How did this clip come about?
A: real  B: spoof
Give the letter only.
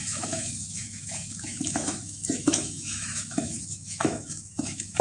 B